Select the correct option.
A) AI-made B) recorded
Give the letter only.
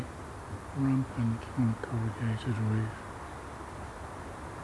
B